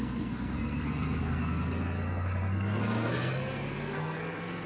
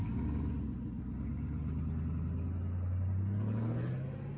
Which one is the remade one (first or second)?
first